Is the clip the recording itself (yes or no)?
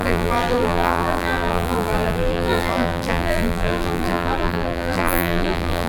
no